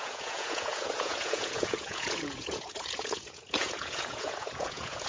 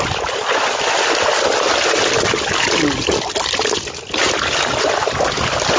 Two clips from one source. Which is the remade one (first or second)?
first